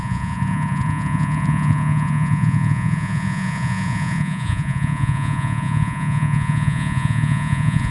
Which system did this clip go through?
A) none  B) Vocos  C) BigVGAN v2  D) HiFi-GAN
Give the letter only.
B